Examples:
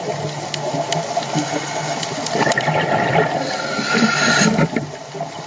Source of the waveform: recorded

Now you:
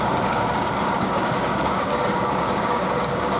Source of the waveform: remade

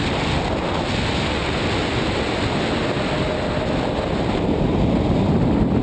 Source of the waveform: recorded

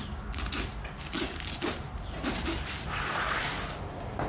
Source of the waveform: recorded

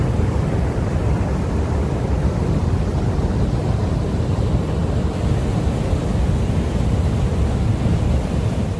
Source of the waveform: recorded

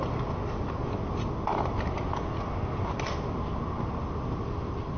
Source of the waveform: recorded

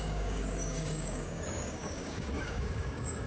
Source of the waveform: remade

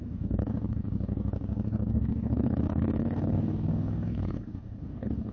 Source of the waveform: remade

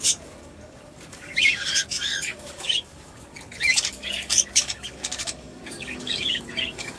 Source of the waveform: remade